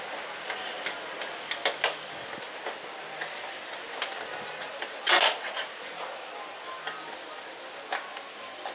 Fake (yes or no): no